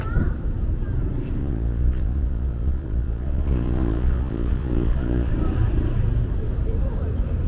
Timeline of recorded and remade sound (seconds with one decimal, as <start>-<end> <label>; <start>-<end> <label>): 0.0-1.4 recorded; 1.4-5.3 remade; 5.3-7.5 recorded